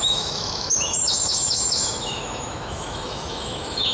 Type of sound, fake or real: fake